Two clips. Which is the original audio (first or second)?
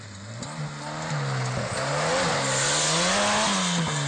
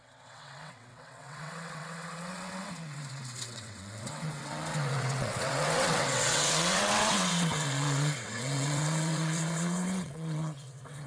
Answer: first